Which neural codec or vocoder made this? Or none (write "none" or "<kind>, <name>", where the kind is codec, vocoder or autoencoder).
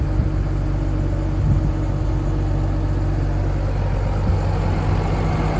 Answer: none